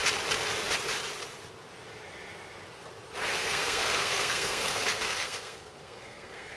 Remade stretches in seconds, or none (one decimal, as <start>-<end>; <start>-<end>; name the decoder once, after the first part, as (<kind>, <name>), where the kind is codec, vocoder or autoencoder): 3.3-6.6 (codec, SNAC)